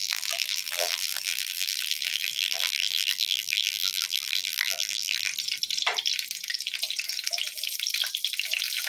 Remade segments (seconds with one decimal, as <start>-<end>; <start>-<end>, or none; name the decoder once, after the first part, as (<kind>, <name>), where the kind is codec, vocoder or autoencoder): 0.0-5.3 (vocoder, BigVGAN v2)